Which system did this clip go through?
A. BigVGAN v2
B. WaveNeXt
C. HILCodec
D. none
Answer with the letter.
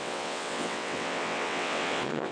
B